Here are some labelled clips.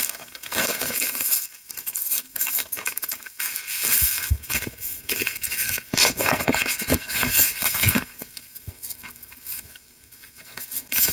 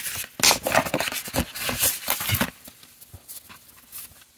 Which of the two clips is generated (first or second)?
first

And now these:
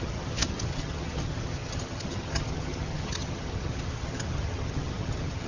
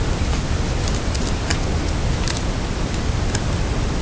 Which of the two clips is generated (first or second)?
first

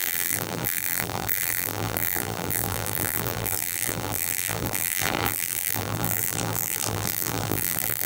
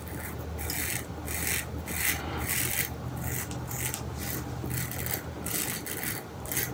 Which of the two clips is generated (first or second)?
first